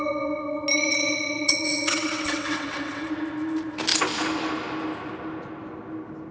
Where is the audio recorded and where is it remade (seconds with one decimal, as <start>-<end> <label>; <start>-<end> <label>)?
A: 0.0-0.9 recorded; 0.9-3.1 remade; 3.1-6.3 recorded